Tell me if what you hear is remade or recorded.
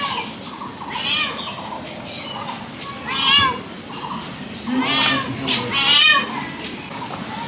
recorded